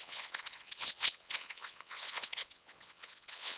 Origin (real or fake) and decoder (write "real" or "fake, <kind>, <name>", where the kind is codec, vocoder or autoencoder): fake, vocoder, WaveNeXt